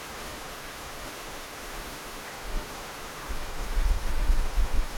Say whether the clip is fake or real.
fake